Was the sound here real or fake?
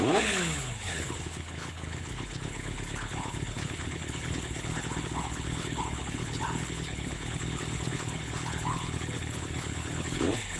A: fake